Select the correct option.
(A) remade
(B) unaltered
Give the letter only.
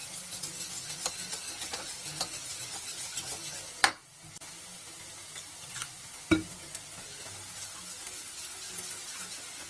B